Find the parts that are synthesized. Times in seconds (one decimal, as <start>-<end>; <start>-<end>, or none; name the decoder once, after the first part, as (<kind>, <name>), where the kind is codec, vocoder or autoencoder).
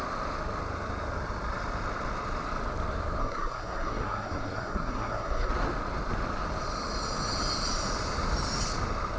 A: 3.2-5.5 (codec, SNAC)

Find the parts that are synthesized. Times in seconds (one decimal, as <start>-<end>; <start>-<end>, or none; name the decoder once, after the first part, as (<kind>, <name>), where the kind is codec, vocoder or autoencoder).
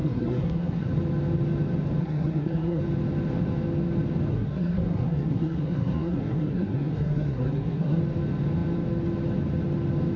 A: 0.0-0.9 (codec, SNAC); 2.0-2.8; 4.3-8.0